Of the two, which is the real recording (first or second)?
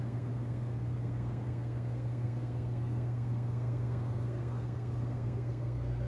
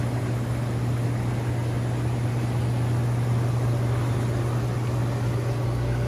second